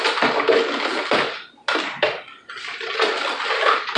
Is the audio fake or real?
real